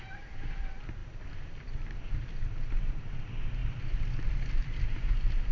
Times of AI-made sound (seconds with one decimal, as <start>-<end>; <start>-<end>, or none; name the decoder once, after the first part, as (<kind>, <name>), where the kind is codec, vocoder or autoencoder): none